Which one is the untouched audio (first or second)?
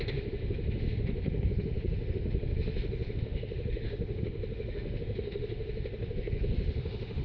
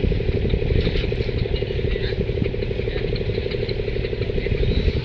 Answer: second